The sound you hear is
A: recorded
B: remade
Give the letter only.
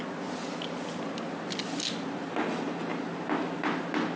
A